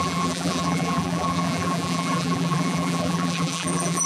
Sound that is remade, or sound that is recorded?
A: remade